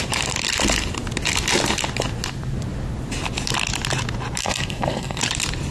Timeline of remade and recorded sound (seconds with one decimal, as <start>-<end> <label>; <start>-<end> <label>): 0.0-4.4 recorded; 4.4-5.2 remade; 5.2-5.7 recorded